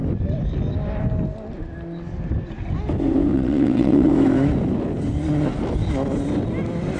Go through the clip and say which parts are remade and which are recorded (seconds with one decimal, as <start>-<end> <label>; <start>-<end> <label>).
0.0-3.3 recorded; 3.3-4.1 remade; 4.1-7.0 recorded